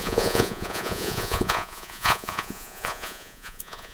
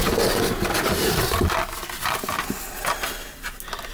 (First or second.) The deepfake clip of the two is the first